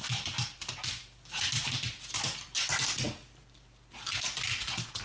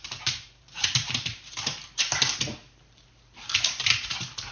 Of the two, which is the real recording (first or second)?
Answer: first